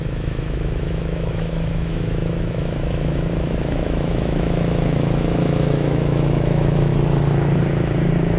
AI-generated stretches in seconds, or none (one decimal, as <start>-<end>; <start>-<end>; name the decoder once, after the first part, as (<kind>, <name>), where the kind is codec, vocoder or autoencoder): 0.0-6.9 (autoencoder, DAC-VAE)